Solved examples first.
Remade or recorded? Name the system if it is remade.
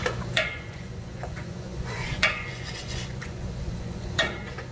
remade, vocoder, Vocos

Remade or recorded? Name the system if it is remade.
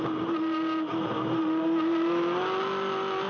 recorded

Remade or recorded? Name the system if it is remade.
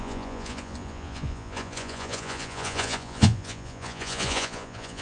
remade, vocoder, Vocos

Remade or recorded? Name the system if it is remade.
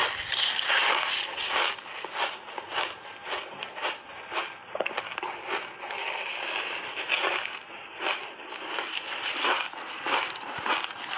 recorded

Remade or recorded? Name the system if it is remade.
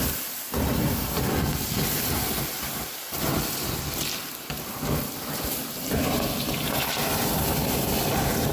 recorded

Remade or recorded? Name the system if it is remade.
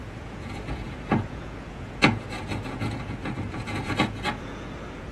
remade, vocoder, Vocos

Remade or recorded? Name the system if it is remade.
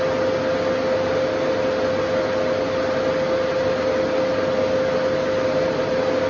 recorded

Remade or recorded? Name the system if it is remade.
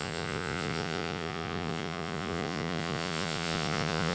remade, vocoder, Vocos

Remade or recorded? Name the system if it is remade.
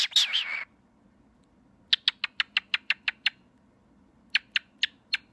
recorded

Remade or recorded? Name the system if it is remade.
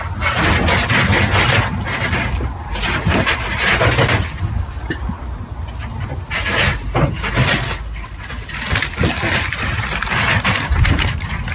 recorded